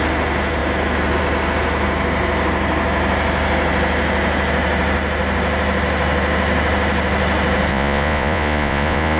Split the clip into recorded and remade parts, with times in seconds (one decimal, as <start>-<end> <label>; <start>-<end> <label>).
0.0-7.7 recorded; 7.7-9.2 remade